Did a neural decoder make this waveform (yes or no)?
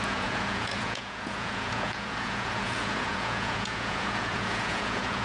yes